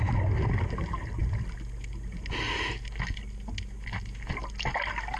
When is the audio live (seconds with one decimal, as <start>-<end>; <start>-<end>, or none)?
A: 0.0-5.2